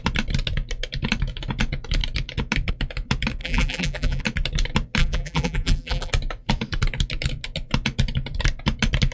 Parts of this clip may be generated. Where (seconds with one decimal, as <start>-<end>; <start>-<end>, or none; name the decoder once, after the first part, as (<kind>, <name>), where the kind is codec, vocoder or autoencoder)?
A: 3.4-4.2 (vocoder, BigVGAN v2); 5.0-6.1